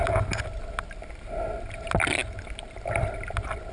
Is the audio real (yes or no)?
yes